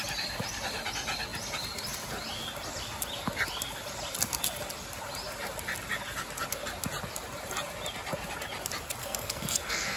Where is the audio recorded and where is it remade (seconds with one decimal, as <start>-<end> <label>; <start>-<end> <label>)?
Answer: 0.0-9.0 recorded; 9.0-10.0 remade